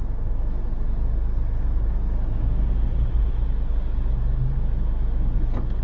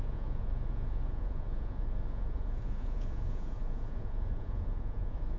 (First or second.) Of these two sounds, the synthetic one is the second